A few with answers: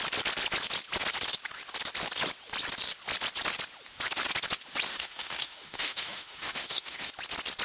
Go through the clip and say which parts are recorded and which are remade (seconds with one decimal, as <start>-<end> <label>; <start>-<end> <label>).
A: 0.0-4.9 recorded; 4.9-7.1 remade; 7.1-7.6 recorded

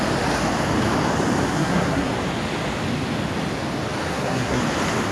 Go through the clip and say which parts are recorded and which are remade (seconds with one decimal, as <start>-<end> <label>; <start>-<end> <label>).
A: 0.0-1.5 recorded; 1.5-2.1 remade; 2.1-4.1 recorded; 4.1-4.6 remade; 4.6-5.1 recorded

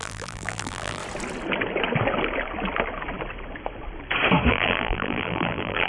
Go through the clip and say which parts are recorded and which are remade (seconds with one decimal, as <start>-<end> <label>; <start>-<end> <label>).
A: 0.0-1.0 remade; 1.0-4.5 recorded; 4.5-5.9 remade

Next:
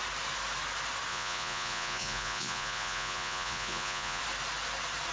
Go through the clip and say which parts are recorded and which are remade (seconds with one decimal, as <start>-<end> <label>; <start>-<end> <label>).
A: 0.0-1.1 recorded; 1.1-4.2 remade; 4.2-5.1 recorded

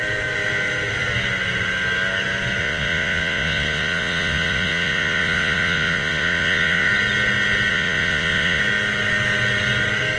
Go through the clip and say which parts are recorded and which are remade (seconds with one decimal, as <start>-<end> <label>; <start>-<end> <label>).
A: 0.0-2.6 recorded; 2.6-6.9 remade; 6.9-7.7 recorded; 7.7-8.6 remade; 8.6-10.2 recorded

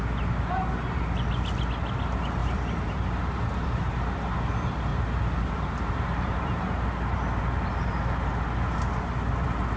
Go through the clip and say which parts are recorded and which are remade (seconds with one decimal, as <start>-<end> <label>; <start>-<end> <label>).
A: 0.0-2.4 recorded; 2.4-3.9 remade; 3.9-4.9 recorded; 4.9-7.1 remade; 7.1-9.8 recorded

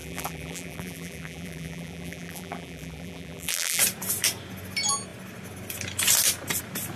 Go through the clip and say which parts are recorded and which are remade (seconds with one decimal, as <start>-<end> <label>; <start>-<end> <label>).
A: 0.0-3.8 remade; 3.8-7.0 recorded